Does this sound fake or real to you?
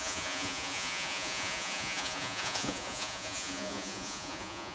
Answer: fake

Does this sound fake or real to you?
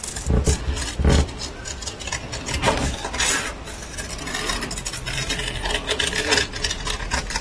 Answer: real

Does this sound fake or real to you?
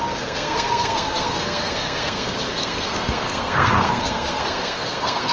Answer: fake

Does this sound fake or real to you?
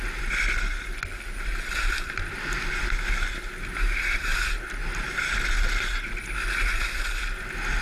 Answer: real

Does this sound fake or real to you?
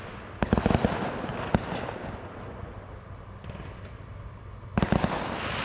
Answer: real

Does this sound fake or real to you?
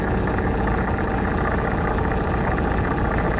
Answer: real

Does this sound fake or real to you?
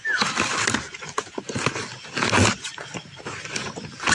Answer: real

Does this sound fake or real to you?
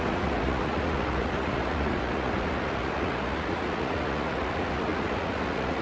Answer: fake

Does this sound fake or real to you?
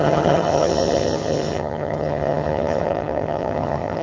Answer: fake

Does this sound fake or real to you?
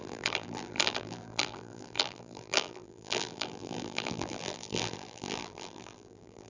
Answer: fake